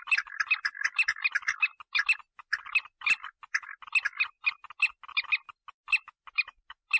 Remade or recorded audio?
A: recorded